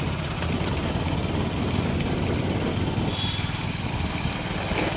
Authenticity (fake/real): real